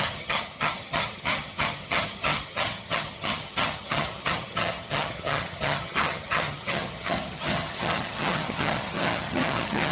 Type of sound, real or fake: fake